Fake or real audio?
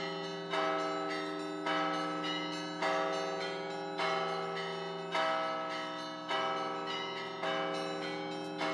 real